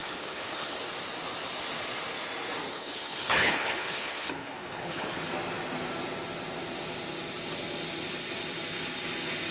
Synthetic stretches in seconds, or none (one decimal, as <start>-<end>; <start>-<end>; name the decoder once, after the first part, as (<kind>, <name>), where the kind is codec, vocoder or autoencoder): 0.0-0.8 (codec, HILCodec); 2.7-5.3